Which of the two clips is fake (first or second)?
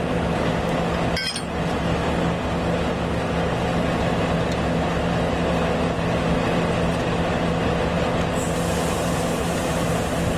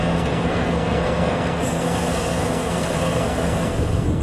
second